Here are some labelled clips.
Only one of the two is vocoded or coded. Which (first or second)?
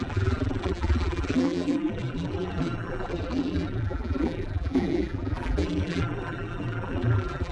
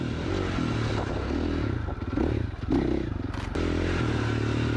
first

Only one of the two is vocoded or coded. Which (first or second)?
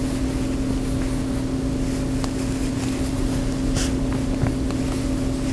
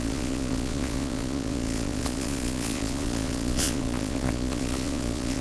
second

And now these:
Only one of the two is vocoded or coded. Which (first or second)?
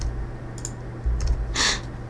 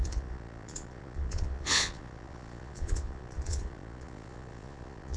second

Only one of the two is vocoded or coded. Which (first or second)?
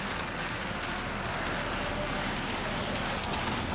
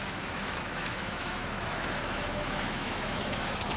second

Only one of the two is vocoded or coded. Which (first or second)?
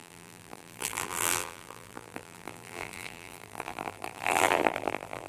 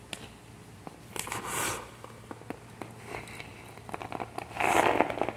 first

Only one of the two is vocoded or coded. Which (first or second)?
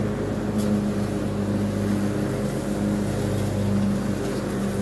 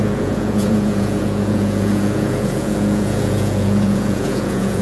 second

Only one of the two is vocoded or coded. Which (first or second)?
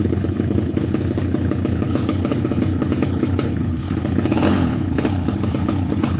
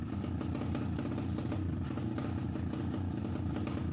first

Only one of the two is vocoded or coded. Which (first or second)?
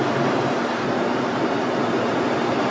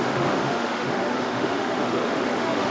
second